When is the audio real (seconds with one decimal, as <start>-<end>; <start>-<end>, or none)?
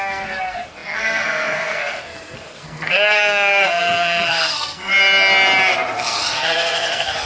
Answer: 4.9-5.9